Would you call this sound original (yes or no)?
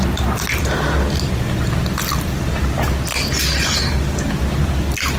yes